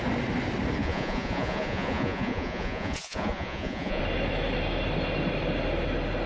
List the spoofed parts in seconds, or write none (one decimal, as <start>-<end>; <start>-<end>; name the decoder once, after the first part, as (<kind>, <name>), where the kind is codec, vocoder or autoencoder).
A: 0.8-4.0 (vocoder, Vocos)